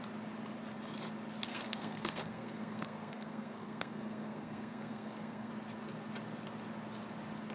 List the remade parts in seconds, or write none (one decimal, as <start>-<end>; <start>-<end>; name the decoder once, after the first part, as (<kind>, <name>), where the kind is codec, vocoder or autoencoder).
1.5-5.5 (codec, SNAC)